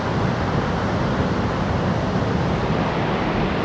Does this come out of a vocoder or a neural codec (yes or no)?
no